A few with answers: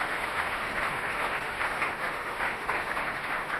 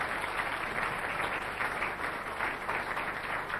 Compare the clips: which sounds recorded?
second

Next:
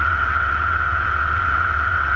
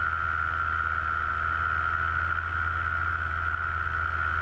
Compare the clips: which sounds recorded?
second